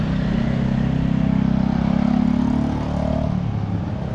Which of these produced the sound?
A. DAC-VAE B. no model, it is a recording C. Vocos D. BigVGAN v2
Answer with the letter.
B